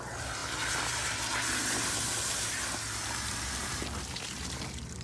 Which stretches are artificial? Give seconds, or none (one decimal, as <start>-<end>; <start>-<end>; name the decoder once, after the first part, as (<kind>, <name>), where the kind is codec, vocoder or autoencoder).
none

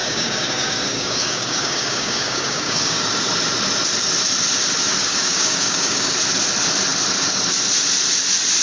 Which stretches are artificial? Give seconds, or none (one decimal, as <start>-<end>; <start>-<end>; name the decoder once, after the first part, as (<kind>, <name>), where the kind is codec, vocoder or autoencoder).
0.0-3.0 (codec, DAC); 5.0-6.1

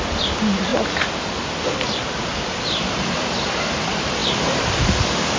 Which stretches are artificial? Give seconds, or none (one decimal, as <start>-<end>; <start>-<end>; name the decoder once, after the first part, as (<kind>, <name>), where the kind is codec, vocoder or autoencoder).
none